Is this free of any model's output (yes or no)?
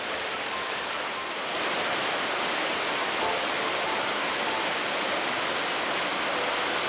yes